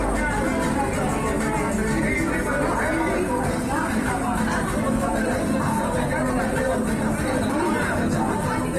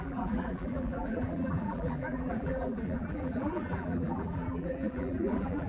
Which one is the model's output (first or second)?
second